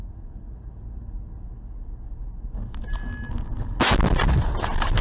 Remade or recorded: recorded